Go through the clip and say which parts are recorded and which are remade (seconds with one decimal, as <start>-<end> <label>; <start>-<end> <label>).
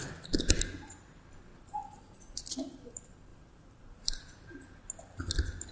0.0-0.6 remade; 0.6-3.3 recorded; 3.3-4.8 remade; 4.8-5.7 recorded